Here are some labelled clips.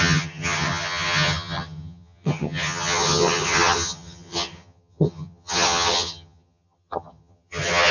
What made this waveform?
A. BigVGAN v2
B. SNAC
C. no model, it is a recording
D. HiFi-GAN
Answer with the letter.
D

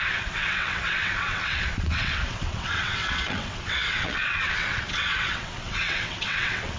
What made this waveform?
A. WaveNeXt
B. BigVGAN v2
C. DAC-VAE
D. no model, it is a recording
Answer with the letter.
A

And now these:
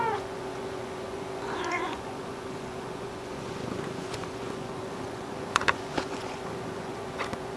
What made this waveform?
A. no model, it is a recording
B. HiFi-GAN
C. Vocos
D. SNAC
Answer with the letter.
C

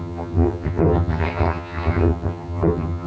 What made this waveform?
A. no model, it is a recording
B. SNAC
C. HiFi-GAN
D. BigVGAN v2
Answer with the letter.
C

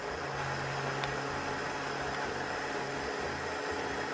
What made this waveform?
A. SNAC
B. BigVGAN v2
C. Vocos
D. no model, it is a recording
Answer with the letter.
D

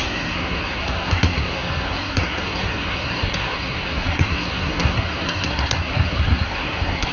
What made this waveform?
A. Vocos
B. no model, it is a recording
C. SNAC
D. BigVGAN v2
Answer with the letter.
C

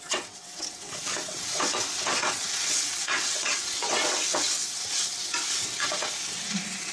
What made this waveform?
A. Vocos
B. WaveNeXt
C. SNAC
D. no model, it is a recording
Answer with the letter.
B